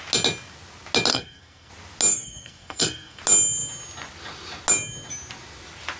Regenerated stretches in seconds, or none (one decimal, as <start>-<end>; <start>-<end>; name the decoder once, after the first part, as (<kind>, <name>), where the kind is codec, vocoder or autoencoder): 1.1-1.7 (codec, SNAC); 2.1-3.2